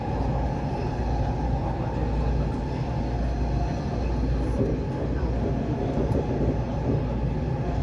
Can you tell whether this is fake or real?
real